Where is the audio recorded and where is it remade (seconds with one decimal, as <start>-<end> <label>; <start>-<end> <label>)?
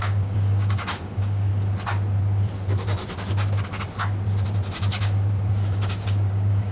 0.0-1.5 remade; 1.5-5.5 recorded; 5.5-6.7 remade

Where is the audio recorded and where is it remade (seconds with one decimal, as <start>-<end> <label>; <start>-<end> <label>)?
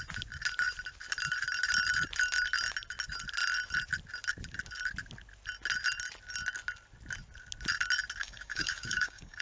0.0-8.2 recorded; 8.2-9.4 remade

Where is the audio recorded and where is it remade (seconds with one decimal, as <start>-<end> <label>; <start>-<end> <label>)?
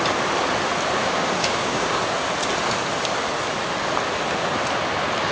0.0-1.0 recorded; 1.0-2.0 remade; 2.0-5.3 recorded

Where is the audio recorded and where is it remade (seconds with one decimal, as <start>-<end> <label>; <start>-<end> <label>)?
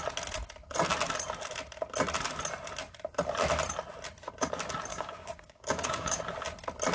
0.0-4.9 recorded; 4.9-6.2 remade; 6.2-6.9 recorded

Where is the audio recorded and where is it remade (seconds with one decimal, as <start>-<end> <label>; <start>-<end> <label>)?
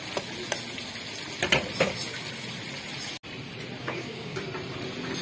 0.0-3.8 recorded; 3.8-4.4 remade; 4.4-5.2 recorded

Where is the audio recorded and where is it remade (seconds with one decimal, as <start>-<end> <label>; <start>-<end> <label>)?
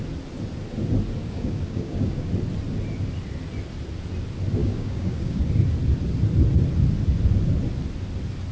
0.0-1.2 recorded; 1.2-2.3 remade; 2.3-4.6 recorded; 4.6-5.4 remade; 5.4-8.5 recorded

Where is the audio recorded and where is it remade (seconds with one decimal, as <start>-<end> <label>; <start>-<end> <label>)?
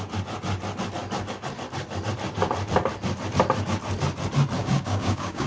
0.0-4.6 recorded; 4.6-5.5 remade